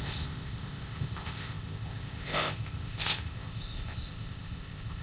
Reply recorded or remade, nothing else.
remade